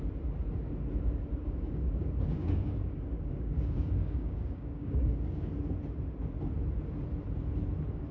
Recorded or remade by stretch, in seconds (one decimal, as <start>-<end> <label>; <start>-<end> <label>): 0.0-1.3 recorded; 1.3-5.5 remade; 5.5-8.1 recorded